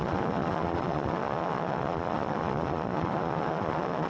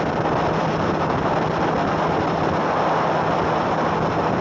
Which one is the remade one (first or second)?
first